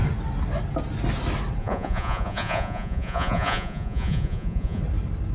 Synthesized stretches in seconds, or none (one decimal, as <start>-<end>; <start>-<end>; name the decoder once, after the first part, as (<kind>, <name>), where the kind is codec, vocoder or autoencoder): 1.6-4.8 (vocoder, Vocos)